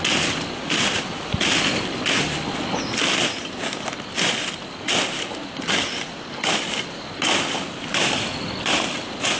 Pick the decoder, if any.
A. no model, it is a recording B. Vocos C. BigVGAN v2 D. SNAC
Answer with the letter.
A